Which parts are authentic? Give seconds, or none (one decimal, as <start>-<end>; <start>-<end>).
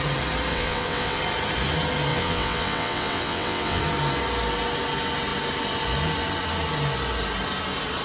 0.0-0.5; 1.2-2.1; 3.8-8.0